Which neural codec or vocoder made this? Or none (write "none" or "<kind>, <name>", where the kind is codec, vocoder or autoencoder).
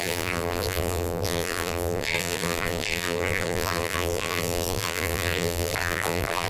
vocoder, BigVGAN v2